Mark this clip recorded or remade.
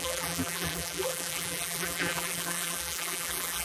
remade